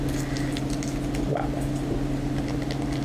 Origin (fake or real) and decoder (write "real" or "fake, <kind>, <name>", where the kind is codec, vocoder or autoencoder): real